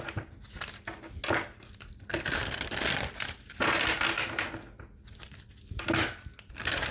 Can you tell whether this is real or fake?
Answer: real